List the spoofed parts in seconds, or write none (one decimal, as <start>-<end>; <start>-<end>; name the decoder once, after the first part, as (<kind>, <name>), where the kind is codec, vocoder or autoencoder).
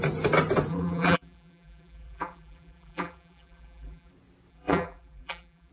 0.7-4.1 (vocoder, BigVGAN v2); 4.5-5.7